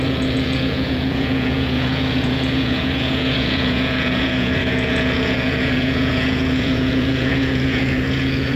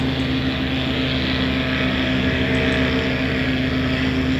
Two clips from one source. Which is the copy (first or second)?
first